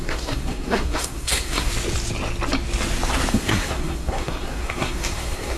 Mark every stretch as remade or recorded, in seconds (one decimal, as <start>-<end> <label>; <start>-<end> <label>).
0.0-1.7 remade; 1.7-3.3 recorded; 3.3-5.6 remade